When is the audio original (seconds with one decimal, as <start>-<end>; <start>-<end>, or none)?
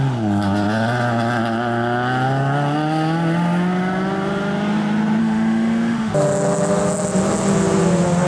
0.0-5.2; 6.1-8.3